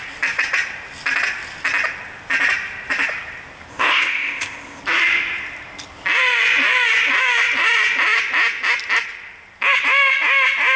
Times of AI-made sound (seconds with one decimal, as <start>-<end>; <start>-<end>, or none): 3.7-4.8